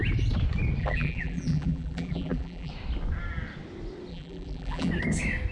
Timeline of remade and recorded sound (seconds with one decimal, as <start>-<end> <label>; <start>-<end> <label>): 0.0-0.8 recorded; 0.8-2.7 remade; 2.7-4.1 recorded; 4.1-4.9 remade; 4.9-5.5 recorded